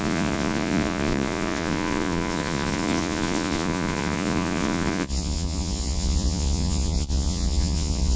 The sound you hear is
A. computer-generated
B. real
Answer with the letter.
A